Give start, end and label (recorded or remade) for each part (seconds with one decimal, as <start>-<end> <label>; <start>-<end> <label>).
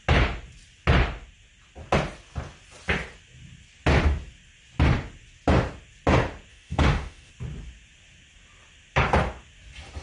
0.0-6.5 recorded; 6.5-7.3 remade; 7.3-10.0 recorded